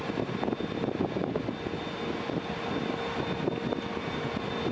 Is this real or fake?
real